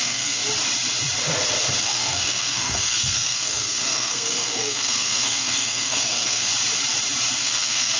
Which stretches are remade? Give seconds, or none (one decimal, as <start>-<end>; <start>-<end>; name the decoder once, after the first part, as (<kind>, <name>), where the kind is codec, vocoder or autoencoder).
0.0-0.4 (codec, SNAC); 1.8-6.5; 7.4-8.0